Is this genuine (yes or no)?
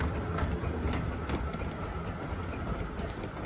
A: yes